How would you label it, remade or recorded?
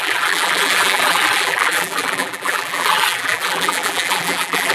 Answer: remade